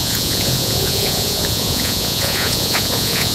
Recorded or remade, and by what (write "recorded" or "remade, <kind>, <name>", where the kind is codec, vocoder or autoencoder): remade, vocoder, Vocos